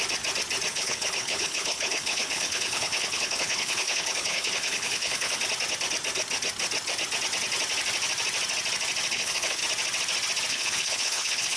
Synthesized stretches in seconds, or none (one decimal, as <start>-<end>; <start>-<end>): 0.7-5.4; 9.1-9.6; 10.5-11.6